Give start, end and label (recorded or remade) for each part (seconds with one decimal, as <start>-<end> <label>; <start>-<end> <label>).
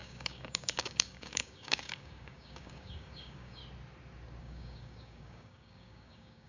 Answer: 0.0-3.6 remade; 3.6-4.4 recorded; 4.4-6.5 remade